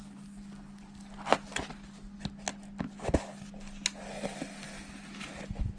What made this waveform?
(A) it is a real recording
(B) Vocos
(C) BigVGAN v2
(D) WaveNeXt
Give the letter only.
A